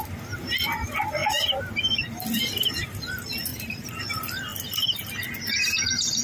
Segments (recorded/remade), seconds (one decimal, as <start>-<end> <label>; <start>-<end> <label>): 0.0-3.5 recorded; 3.5-4.0 remade; 4.0-6.2 recorded